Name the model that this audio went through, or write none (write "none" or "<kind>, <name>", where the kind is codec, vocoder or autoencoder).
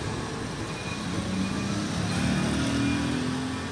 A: none